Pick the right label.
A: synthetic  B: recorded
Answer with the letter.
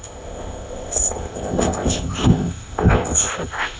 A